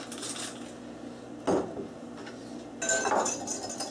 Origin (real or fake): real